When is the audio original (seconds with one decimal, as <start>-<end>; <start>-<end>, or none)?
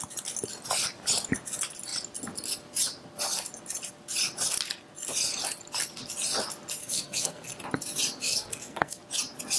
0.0-6.8; 7.5-8.2; 9.0-9.6